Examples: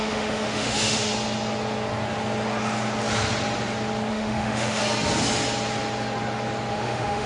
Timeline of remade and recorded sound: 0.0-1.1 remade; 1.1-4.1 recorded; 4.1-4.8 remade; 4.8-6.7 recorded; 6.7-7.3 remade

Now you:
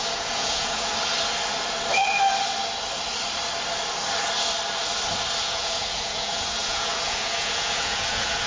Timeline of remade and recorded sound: 0.0-0.9 remade; 0.9-5.4 recorded; 5.4-8.5 remade

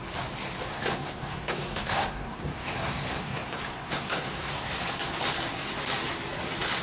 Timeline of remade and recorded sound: 0.0-0.6 recorded; 0.6-4.7 remade; 4.7-6.8 recorded

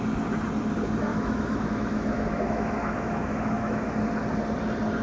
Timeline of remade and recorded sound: 0.0-1.1 recorded; 1.1-3.9 remade; 3.9-5.0 recorded

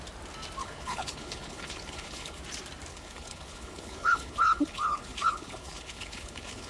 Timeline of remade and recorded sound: 0.0-0.6 recorded; 0.6-2.4 remade; 2.4-2.9 recorded; 2.9-6.7 remade

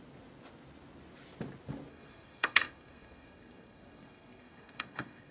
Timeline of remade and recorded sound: 0.0-1.9 recorded; 1.9-5.3 remade

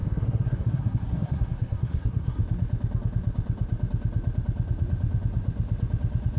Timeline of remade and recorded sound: 0.0-2.4 remade; 2.4-6.4 recorded